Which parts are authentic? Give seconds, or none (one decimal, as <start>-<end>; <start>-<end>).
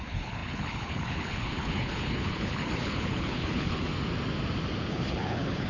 3.9-4.9